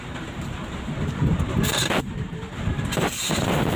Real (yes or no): no